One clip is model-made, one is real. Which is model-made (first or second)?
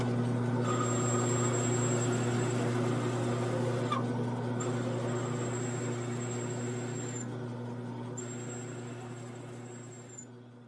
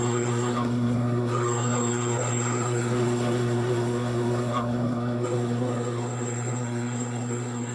second